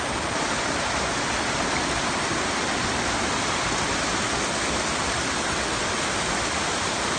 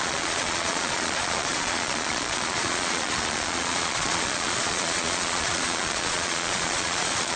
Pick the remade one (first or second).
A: second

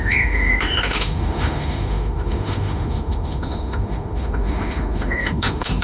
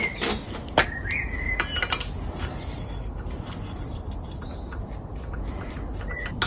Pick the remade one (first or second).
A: first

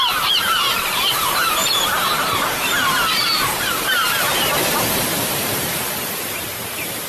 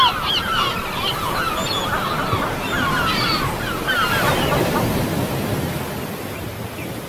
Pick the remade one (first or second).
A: first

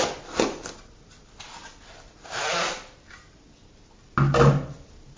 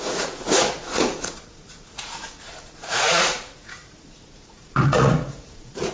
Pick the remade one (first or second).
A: second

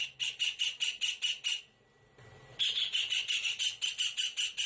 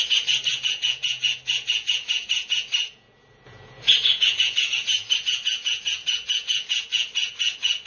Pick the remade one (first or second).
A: second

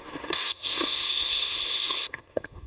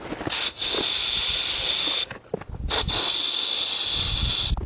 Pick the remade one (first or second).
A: first